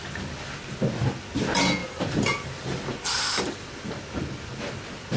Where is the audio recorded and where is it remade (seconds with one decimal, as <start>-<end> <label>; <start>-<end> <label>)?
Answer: 0.0-1.8 recorded; 1.8-3.8 remade; 3.8-5.2 recorded